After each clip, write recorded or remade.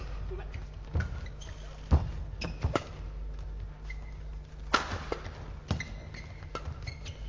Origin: recorded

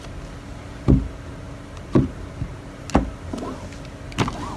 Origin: recorded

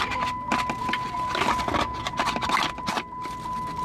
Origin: recorded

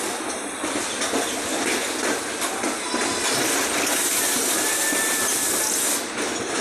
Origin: recorded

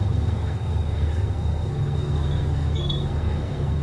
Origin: remade